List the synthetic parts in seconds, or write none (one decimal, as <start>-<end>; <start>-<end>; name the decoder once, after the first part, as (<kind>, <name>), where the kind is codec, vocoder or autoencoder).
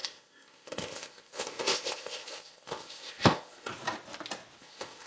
0.0-3.7 (codec, ZipCodec); 4.6-5.1